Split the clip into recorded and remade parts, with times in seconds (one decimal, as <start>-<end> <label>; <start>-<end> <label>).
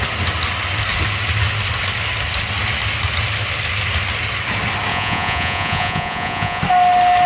0.0-4.9 recorded; 4.9-6.6 remade; 6.6-7.3 recorded